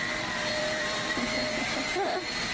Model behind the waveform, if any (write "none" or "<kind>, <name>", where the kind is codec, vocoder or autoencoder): vocoder, BigVGAN v2